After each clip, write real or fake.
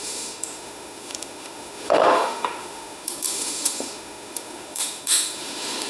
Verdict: fake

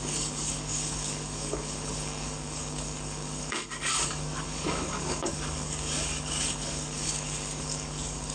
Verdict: fake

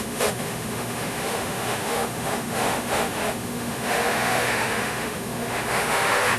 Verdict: fake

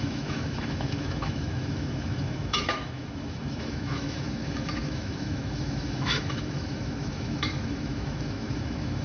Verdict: fake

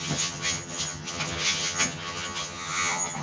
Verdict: fake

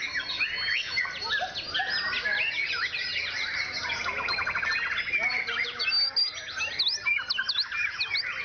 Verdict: real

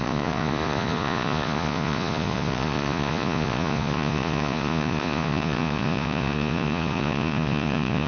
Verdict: fake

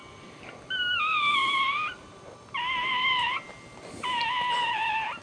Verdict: real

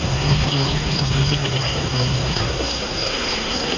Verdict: fake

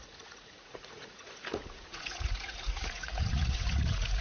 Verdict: fake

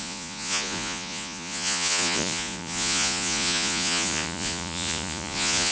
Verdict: fake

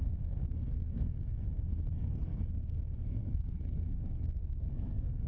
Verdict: fake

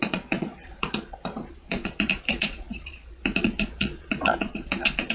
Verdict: fake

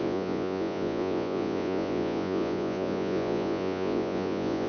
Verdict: fake